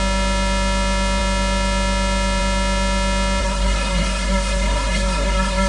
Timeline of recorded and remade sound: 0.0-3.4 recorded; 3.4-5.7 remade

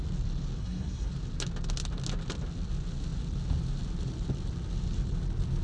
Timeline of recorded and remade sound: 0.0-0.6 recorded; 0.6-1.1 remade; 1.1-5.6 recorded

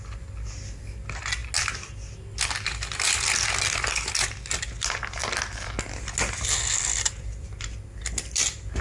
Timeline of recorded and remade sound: 0.0-8.8 recorded

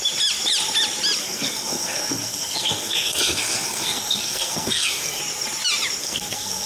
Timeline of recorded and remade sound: 0.0-1.2 recorded; 1.2-5.2 remade; 5.2-6.0 recorded; 6.0-6.7 remade

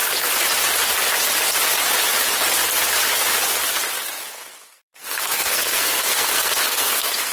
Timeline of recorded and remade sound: 0.0-4.3 recorded; 4.3-7.3 remade

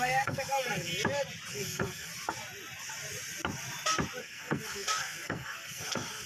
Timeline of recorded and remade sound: 0.0-0.9 remade; 0.9-1.5 recorded; 1.5-2.1 remade; 2.1-4.2 recorded; 4.2-6.3 remade